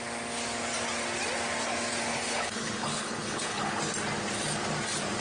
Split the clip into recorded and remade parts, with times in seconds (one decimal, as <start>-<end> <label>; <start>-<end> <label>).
0.0-2.1 recorded; 2.1-3.8 remade; 3.8-5.2 recorded